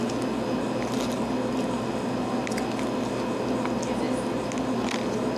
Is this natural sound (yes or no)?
yes